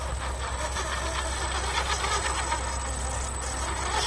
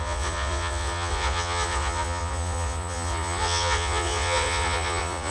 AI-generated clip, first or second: second